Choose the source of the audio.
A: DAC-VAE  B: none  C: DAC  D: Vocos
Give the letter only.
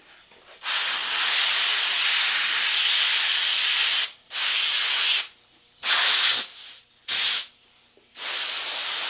B